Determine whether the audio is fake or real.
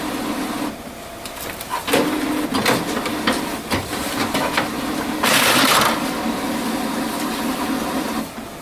real